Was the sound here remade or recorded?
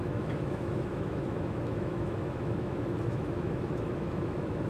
remade